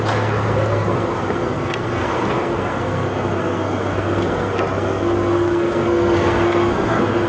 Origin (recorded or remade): remade